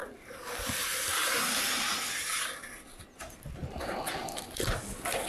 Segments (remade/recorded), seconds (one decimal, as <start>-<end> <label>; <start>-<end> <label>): 0.0-5.3 recorded